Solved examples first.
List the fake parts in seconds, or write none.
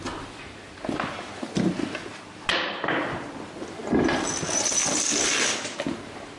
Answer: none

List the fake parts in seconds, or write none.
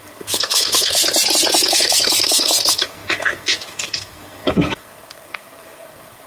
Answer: 0.0-1.0 (codec, SNAC); 1.7-6.3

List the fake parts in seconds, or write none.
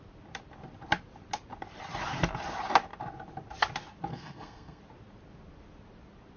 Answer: 4.1-4.8 (codec, SNAC)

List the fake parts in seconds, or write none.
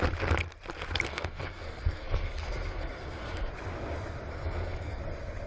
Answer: 1.1-3.5 (codec, SNAC); 4.3-5.0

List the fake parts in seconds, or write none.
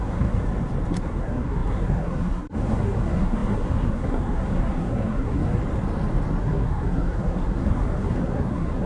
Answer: 0.0-0.4 (codec, SNAC); 0.9-5.6; 6.4-8.9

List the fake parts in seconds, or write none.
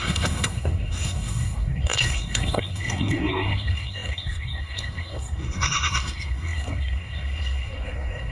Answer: 0.0-8.3 (codec, SNAC)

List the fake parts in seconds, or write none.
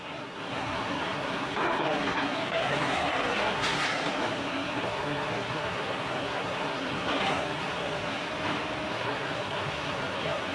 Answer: 0.0-8.3 (codec, SNAC); 8.9-10.5